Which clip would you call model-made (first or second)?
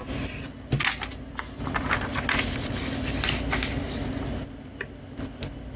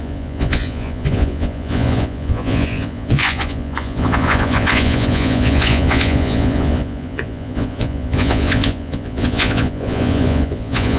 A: second